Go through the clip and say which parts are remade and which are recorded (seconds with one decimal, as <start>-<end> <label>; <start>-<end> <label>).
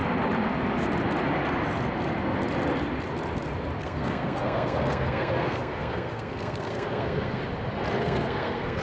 0.0-3.8 recorded; 3.8-7.4 remade; 7.4-8.0 recorded; 8.0-8.8 remade